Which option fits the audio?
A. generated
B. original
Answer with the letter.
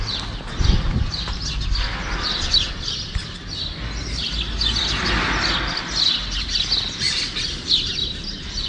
B